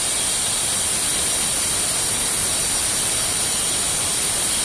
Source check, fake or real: real